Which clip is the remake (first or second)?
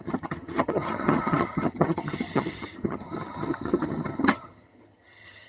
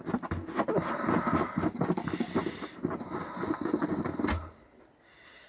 first